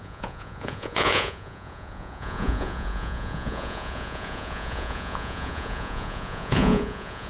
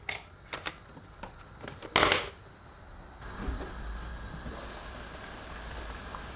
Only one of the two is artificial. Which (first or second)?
first